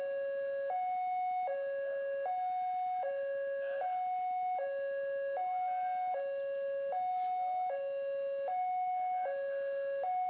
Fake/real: real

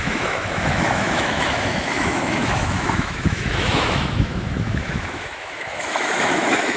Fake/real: fake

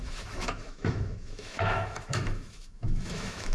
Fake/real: fake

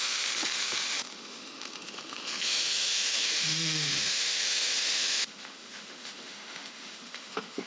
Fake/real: fake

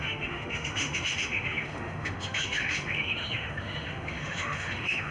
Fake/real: fake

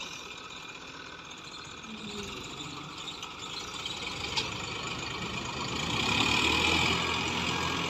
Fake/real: real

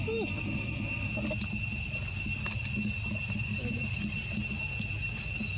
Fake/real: real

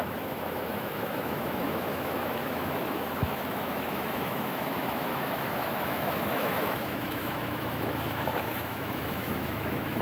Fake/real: fake